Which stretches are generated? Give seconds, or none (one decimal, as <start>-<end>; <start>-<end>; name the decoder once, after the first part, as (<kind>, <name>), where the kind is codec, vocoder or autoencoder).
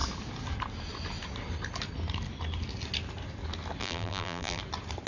3.8-4.6 (vocoder, BigVGAN v2)